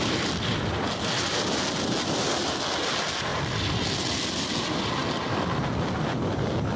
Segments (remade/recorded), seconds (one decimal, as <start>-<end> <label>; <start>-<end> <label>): 0.0-6.8 recorded